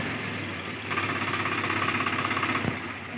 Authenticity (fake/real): real